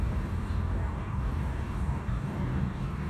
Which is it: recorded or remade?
remade